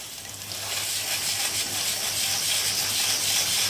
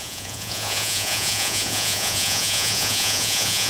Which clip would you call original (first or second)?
first